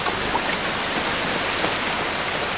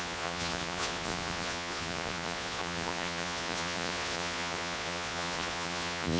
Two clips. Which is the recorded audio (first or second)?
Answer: first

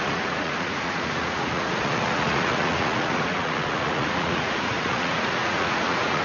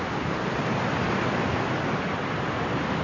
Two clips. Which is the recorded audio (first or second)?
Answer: second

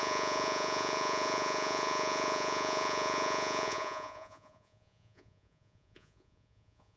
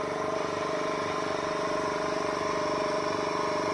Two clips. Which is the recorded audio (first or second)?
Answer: second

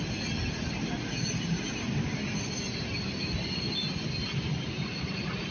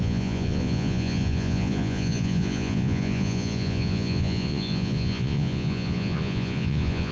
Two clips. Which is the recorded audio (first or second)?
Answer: first